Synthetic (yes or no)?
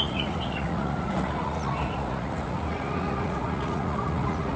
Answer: yes